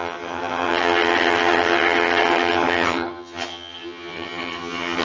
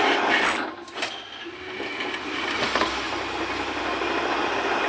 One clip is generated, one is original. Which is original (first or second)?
second